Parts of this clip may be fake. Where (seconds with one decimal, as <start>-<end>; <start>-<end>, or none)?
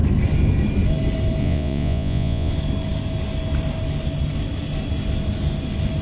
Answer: 1.4-2.5